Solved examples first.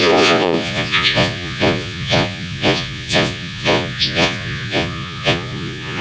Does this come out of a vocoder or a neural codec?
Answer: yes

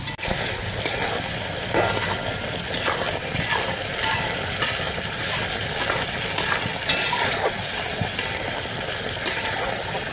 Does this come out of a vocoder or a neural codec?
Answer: no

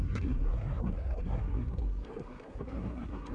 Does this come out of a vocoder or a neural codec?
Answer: yes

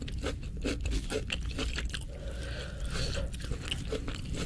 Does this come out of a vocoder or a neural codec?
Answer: no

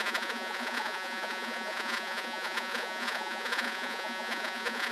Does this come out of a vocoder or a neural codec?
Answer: yes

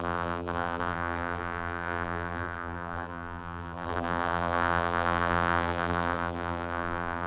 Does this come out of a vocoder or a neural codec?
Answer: yes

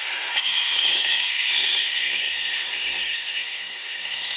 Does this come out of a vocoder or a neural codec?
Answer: yes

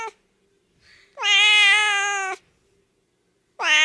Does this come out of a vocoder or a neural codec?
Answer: no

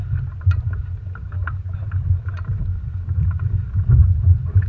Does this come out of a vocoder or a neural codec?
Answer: no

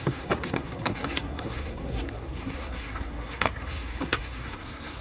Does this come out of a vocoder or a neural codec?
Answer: yes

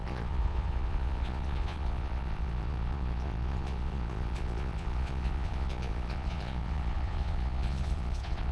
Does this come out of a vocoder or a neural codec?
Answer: yes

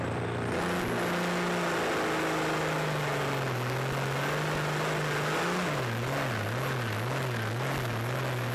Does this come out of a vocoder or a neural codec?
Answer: no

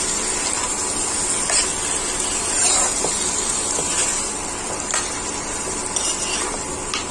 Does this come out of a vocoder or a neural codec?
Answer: no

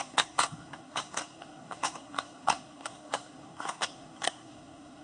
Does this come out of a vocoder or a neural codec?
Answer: yes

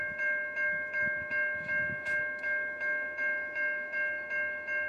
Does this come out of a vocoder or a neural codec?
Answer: yes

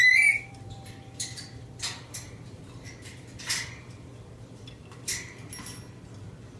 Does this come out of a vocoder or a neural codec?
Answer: yes